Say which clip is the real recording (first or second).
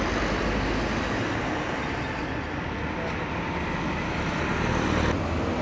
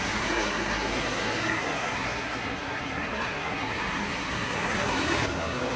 first